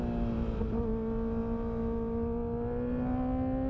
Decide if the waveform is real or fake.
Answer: real